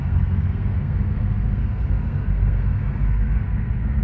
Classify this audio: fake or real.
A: fake